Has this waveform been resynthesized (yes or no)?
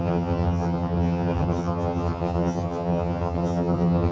yes